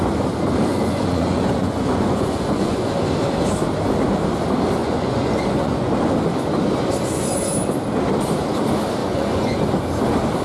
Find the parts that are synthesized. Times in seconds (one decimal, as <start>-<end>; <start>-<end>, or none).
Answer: 0.7-2.9; 4.8-5.9; 9.0-9.6